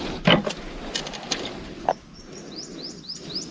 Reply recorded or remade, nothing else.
recorded